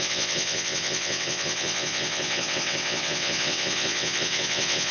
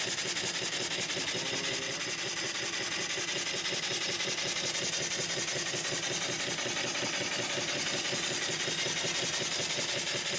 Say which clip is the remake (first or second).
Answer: first